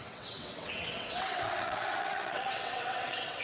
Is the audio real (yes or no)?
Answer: no